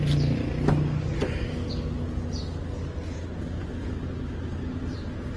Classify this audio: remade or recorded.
recorded